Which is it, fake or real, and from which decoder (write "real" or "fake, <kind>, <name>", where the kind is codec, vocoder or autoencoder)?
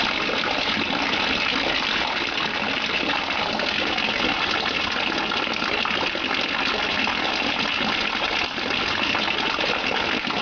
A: real